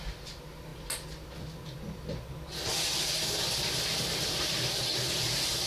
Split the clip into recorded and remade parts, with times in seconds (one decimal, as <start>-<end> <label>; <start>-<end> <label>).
0.0-5.7 recorded